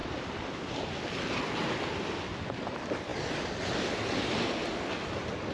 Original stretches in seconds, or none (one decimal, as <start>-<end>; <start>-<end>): 0.0-5.5